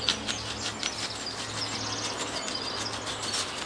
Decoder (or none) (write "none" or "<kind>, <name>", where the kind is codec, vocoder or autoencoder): none